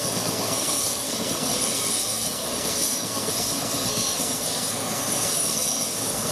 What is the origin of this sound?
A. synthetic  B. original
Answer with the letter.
A